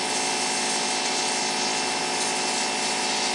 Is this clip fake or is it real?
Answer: real